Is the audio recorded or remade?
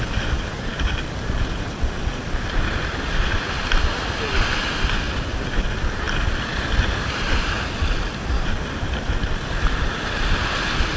recorded